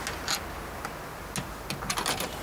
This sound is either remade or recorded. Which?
recorded